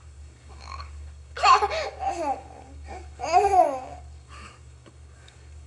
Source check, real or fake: fake